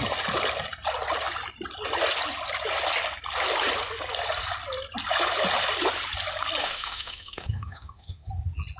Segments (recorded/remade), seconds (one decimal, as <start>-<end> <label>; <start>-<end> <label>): 0.0-6.6 recorded; 6.6-8.3 remade; 8.3-8.8 recorded

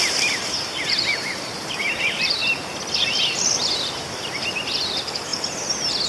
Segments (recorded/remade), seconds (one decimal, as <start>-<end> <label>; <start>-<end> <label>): 0.0-2.4 remade; 2.4-4.0 recorded; 4.0-5.3 remade; 5.3-6.1 recorded

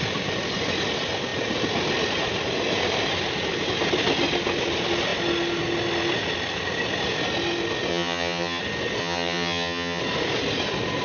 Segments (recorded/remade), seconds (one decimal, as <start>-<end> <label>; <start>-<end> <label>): 0.0-7.9 recorded; 7.9-8.6 remade; 8.6-9.0 recorded; 9.0-10.0 remade; 10.0-11.0 recorded

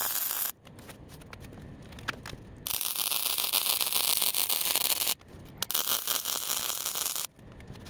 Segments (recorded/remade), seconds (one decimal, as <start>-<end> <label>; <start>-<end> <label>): 0.0-1.2 remade; 1.2-7.9 recorded

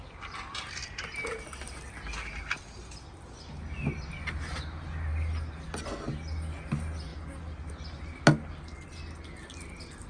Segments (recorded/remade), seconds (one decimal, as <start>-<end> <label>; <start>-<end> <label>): 0.0-10.1 recorded

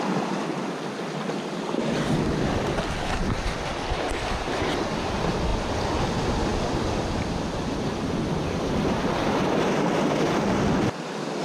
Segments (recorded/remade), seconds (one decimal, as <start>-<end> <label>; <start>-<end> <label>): 0.0-5.5 recorded; 5.5-6.0 remade; 6.0-11.4 recorded

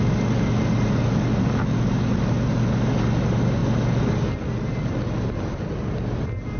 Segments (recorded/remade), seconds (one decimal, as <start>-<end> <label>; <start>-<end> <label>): 0.0-6.6 recorded